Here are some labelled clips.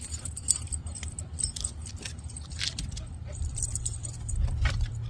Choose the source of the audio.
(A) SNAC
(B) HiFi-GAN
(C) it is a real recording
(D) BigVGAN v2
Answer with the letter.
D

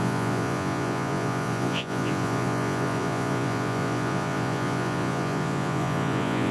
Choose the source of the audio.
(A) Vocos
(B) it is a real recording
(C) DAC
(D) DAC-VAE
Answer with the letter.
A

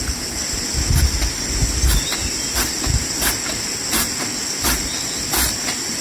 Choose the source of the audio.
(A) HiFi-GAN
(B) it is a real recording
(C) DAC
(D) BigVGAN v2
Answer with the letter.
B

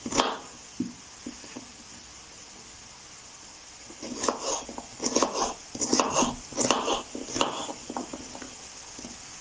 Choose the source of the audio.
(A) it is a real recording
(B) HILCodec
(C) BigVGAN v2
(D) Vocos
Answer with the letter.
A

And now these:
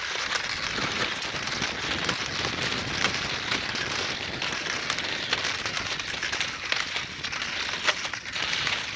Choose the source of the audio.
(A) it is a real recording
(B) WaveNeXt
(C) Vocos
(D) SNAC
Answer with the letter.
A